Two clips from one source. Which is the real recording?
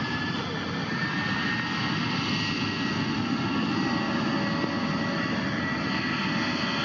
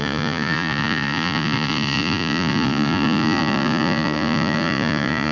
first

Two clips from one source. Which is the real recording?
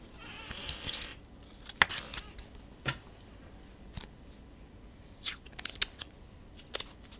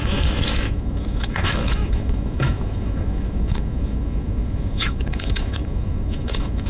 first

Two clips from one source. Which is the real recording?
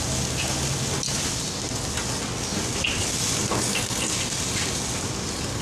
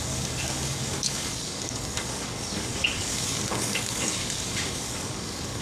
first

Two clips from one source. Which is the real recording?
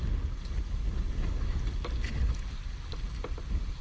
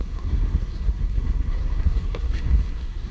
first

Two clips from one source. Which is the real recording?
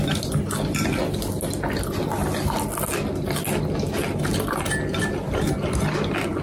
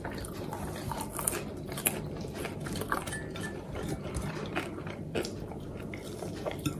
first